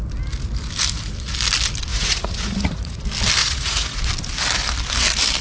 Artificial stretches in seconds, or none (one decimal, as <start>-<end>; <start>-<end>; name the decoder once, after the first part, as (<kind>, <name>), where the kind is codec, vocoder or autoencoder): 1.9-3.0 (vocoder, Vocos); 3.4-4.0